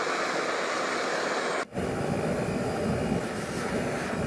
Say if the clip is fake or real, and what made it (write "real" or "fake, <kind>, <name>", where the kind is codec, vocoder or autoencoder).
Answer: real